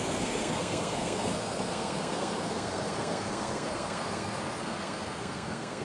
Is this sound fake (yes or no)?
yes